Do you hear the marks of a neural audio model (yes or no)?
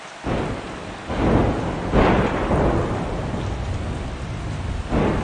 no